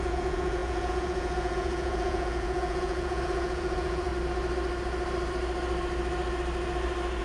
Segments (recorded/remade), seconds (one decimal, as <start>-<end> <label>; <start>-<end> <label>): 0.0-4.1 remade; 4.1-7.2 recorded